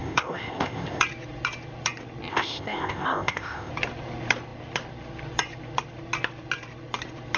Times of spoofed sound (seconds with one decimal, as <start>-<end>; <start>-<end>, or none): 0.0-1.0; 2.3-3.7